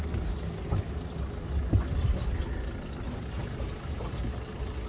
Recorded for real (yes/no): yes